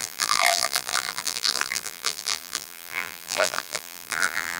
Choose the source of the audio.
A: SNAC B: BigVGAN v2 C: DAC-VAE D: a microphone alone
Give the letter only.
B